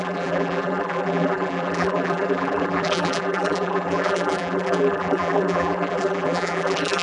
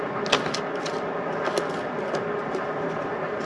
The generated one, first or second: first